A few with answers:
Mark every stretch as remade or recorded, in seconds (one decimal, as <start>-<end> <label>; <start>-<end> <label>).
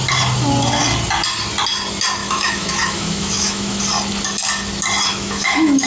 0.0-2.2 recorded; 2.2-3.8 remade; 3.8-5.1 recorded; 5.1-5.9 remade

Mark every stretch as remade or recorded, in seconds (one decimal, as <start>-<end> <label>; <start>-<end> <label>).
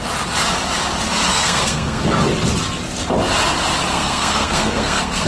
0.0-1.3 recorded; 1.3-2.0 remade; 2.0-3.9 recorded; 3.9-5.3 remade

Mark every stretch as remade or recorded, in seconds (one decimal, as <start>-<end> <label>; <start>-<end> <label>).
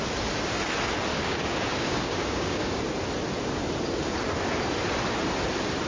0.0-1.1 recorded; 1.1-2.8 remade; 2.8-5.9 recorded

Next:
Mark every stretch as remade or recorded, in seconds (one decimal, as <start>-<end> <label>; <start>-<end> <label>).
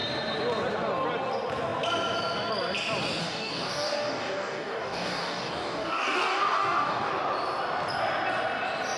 0.0-3.2 recorded; 3.2-7.1 remade; 7.1-9.0 recorded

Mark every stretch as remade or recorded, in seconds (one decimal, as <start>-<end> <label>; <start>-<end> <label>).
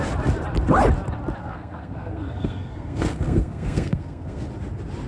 0.0-1.4 recorded; 1.4-4.5 remade; 4.5-5.1 recorded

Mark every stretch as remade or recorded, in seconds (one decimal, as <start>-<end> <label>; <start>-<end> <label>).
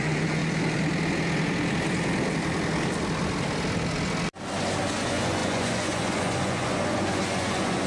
0.0-0.4 remade; 0.4-4.8 recorded; 4.8-7.9 remade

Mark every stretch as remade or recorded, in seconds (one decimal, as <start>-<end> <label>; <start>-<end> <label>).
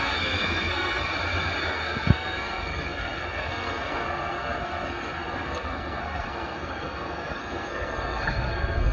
0.0-1.1 remade; 1.1-1.7 recorded; 1.7-8.9 remade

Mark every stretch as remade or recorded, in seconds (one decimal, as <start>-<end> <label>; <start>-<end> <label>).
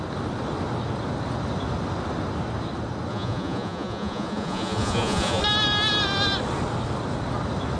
0.0-3.1 recorded; 3.1-5.4 remade; 5.4-7.8 recorded